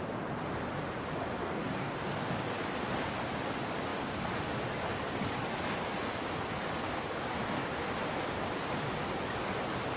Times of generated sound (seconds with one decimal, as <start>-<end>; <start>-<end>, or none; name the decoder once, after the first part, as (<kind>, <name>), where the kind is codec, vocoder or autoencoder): 1.4-2.3 (codec, DAC)